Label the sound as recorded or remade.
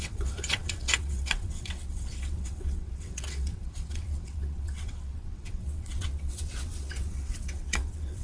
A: remade